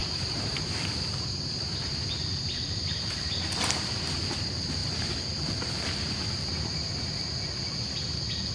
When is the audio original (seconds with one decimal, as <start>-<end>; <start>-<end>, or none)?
4.2-8.5